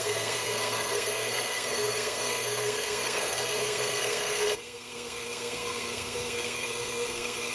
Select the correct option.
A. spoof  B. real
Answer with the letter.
A